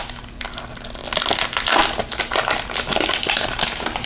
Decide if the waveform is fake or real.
real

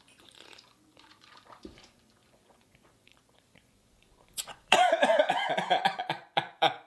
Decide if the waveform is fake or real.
fake